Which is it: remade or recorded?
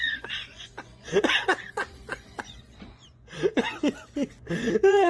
remade